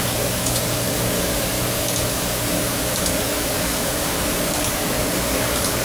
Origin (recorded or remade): remade